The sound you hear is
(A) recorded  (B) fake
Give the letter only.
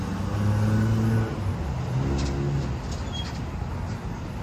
A